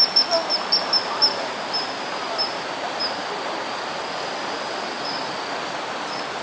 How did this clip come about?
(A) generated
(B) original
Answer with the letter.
B